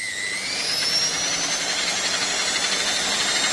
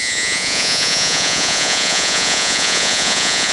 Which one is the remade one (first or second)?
second